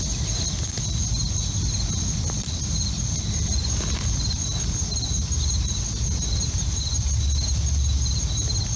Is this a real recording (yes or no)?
yes